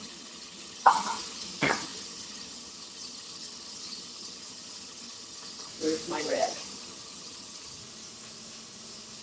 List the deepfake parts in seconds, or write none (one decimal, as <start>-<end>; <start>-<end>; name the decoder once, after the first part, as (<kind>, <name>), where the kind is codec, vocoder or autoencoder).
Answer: 0.0-5.7 (vocoder, HiFi-GAN); 6.2-7.8